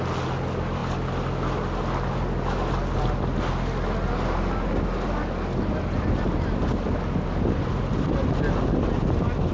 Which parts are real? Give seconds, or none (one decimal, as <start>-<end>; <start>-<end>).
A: 0.0-9.5